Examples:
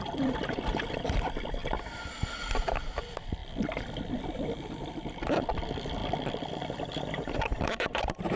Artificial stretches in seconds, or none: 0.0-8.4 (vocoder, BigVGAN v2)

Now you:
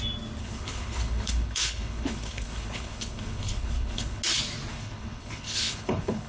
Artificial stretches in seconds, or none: 0.4-4.2 (codec, HILCodec); 4.7-6.3

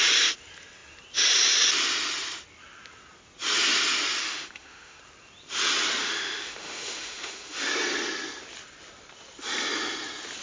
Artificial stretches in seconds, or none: 4.2-5.0 (autoencoder, DAC-VAE); 6.0-7.7

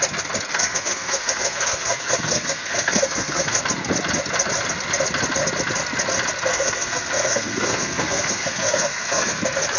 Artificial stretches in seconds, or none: 0.5-3.6 (codec, SNAC); 6.5-9.4

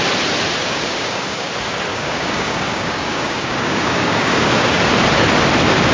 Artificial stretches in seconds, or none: 0.6-1.5 (codec, DAC); 1.9-4.8

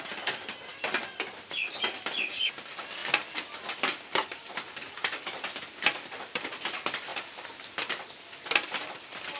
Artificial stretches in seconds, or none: none